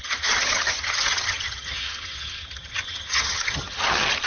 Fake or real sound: fake